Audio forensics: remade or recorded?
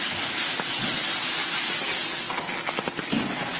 recorded